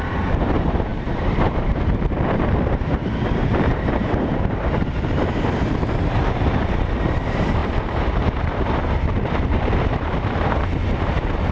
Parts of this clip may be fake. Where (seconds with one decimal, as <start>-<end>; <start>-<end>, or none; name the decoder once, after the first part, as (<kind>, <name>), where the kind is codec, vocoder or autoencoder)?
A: 0.0-11.5 (vocoder, BigVGAN v2)